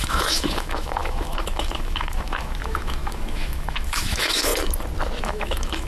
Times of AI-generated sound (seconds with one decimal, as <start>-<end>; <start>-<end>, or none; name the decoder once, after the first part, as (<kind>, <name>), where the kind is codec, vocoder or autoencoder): 0.0-4.5 (autoencoder, DAC-VAE); 5.2-5.9